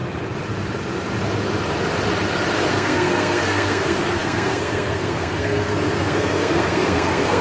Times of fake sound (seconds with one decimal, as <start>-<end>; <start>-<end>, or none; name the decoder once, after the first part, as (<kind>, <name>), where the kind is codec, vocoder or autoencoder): 2.7-7.4 (codec, SNAC)